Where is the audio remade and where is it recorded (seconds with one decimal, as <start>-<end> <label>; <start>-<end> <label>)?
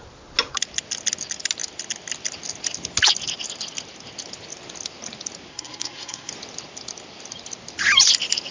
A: 0.0-5.5 recorded; 5.5-6.3 remade; 6.3-8.5 recorded